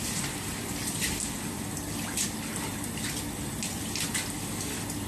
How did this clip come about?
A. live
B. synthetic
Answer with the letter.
A